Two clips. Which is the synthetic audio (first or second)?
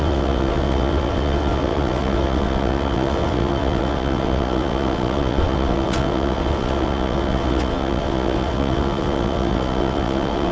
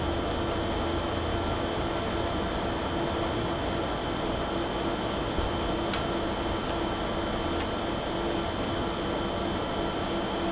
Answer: first